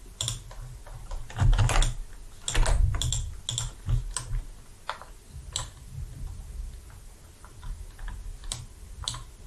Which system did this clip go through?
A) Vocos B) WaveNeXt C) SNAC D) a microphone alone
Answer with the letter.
D